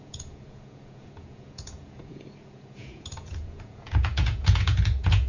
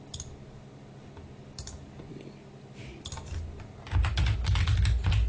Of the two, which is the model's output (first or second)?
first